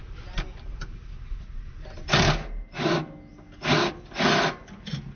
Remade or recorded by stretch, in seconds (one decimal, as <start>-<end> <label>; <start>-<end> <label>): 0.0-5.2 recorded